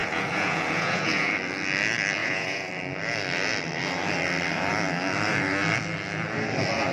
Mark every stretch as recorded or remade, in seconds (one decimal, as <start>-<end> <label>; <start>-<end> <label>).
0.0-1.3 remade; 1.3-2.2 recorded; 2.2-2.7 remade; 2.7-6.9 recorded